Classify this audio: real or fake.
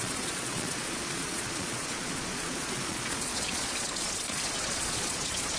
fake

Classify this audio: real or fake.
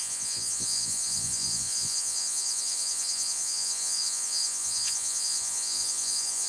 fake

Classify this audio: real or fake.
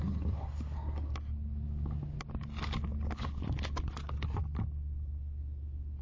real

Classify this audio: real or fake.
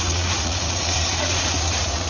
fake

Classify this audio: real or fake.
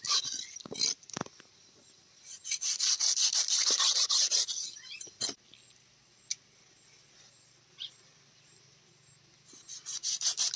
real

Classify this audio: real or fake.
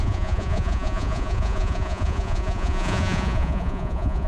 fake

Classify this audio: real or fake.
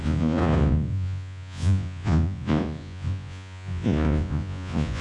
fake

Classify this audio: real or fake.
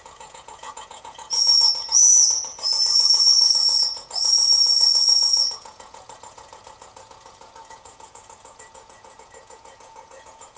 fake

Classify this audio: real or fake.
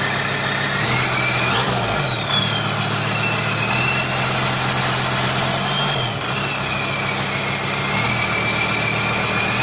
real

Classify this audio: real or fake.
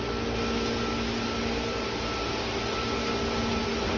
real